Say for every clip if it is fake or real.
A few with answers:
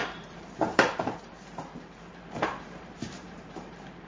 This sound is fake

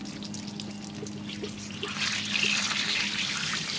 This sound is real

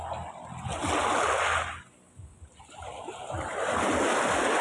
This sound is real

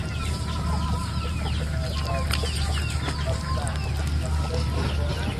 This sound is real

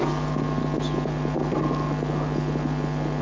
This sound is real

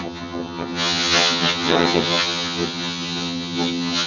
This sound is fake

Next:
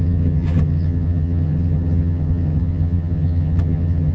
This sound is fake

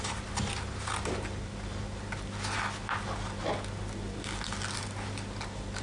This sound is real